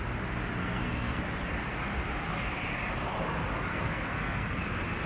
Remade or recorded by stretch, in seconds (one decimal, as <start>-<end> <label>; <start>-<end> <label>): 0.0-0.6 recorded; 0.6-1.2 remade; 1.2-3.7 recorded; 3.7-4.6 remade; 4.6-5.1 recorded

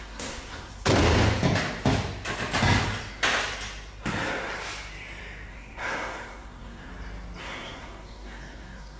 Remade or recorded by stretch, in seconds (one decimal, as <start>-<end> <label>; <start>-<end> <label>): 0.0-0.9 remade; 0.9-5.5 recorded; 5.5-6.9 remade; 6.9-7.4 recorded; 7.4-9.0 remade

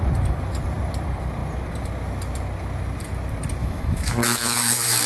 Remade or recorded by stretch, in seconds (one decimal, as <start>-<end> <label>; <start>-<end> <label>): 0.0-3.6 recorded; 3.6-5.1 remade

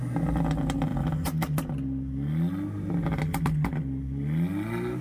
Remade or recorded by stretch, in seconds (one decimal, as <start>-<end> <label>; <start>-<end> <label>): 0.0-5.0 recorded

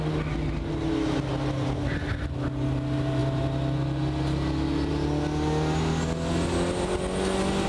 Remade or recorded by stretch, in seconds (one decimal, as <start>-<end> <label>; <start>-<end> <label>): 0.0-7.7 recorded

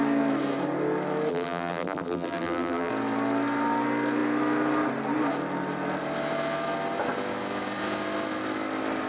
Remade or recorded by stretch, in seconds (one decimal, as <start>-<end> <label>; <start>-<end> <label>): 0.0-1.3 recorded; 1.3-2.9 remade; 2.9-9.1 recorded